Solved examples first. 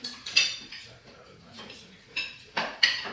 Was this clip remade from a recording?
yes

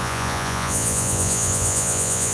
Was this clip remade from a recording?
yes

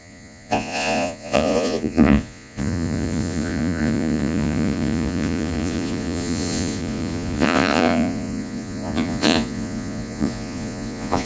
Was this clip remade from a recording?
yes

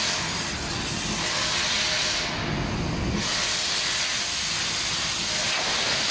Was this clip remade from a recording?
no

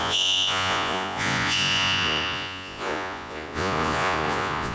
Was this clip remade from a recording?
yes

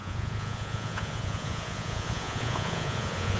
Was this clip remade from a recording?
yes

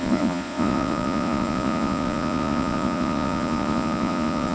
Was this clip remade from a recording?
yes